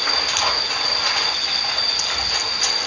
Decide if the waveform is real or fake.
real